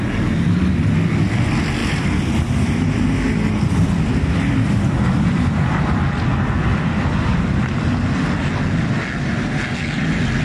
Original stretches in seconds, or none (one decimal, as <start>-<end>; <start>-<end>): 0.0-1.8; 5.8-6.7; 8.5-10.4